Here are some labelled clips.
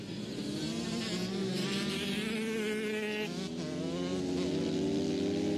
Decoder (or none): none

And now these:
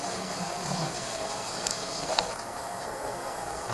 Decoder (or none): codec, SNAC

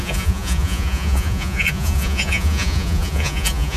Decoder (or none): vocoder, Vocos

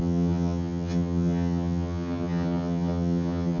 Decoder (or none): vocoder, HiFi-GAN